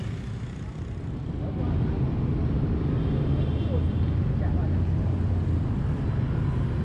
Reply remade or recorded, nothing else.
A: recorded